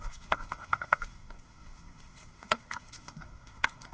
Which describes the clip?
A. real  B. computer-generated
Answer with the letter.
B